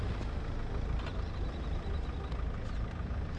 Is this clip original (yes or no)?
yes